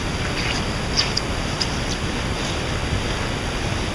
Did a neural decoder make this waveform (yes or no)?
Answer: no